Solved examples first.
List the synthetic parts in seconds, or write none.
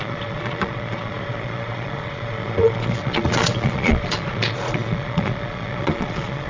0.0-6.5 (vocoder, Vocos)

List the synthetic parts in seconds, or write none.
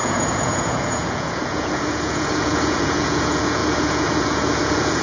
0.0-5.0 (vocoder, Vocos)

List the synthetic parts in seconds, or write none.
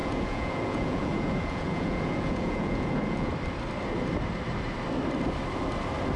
0.0-3.3 (vocoder, Vocos)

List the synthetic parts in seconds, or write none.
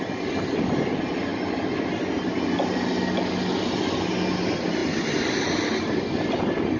none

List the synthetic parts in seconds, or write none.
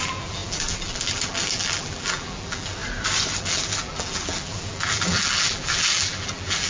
0.0-2.8 (vocoder, BigVGAN v2); 3.4-6.7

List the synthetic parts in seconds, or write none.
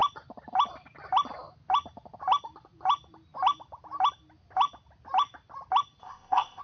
6.0-6.6 (codec, ZipCodec)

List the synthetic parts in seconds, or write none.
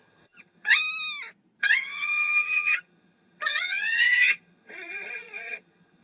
0.0-0.8 (vocoder, HiFi-GAN); 1.6-6.0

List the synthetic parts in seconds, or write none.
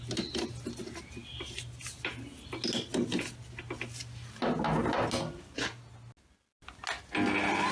none